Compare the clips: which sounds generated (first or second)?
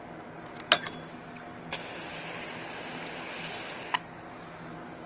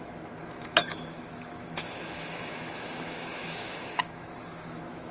second